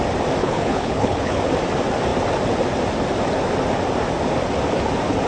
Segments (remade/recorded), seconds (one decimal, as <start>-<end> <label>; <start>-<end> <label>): 0.0-0.4 recorded; 0.4-1.4 remade; 1.4-5.3 recorded